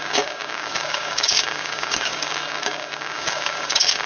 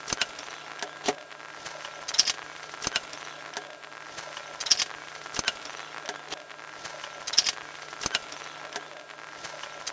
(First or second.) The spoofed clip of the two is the first